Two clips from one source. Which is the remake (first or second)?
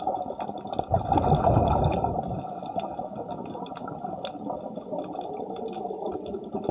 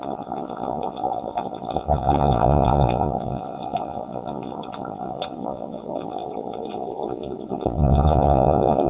second